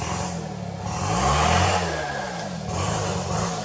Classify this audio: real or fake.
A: real